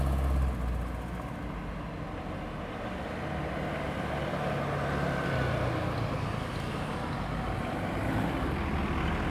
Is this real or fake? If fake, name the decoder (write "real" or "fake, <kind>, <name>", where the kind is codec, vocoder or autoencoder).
real